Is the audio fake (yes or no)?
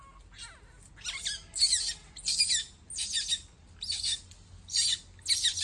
no